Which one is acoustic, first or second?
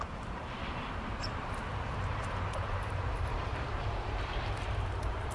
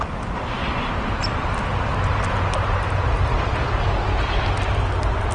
second